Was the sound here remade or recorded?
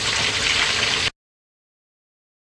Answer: recorded